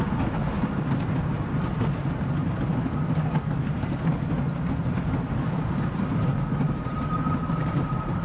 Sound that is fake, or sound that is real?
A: real